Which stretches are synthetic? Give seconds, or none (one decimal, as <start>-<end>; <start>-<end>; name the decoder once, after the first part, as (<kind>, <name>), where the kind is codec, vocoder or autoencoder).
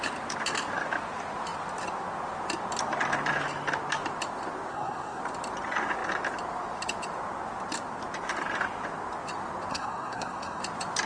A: 4.7-5.2 (codec, SNAC); 9.7-10.6